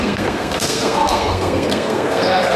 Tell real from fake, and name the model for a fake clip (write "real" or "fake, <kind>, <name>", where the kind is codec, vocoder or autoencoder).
fake, codec, SNAC